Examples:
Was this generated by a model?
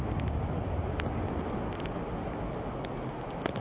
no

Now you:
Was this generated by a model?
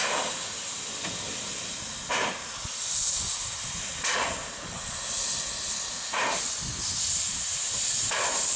no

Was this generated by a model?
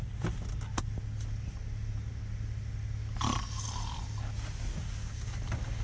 no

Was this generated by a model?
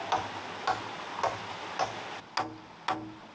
no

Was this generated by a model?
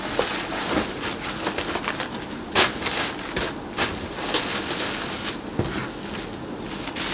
no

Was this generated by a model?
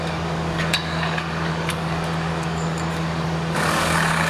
yes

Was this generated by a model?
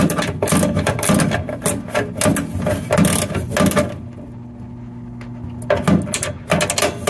no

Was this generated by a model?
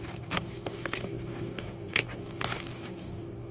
yes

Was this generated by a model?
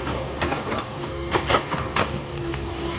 yes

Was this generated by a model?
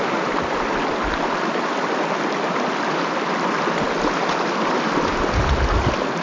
no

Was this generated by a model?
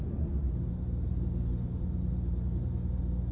no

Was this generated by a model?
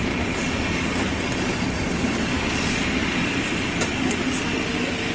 no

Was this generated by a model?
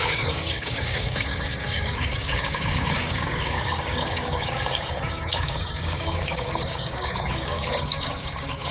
yes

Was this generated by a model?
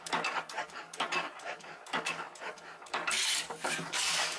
yes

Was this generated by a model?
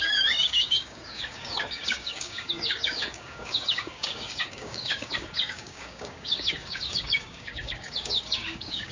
yes